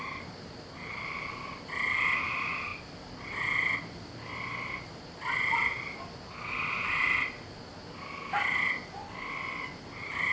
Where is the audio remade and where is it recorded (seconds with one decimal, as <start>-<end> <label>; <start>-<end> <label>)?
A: 0.0-10.3 recorded